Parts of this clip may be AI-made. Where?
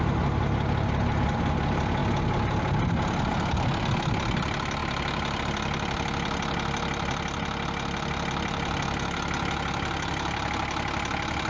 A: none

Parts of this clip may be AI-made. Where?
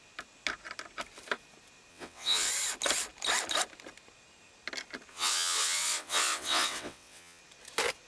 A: 1.9-2.5 (vocoder, WaveNeXt); 5.1-7.4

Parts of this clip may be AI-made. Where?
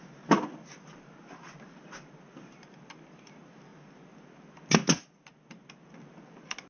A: none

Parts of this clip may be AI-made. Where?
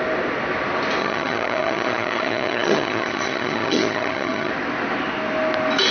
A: 1.0-4.5 (vocoder, HiFi-GAN)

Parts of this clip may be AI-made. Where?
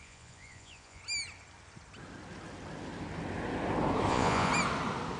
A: 0.0-1.0 (vocoder, Vocos); 4.1-4.5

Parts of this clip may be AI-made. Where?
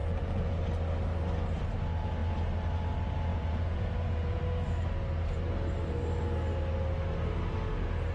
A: 0.0-0.6 (vocoder, Vocos); 3.3-4.4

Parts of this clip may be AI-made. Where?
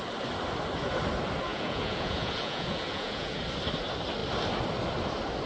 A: 1.5-3.4 (vocoder, Vocos)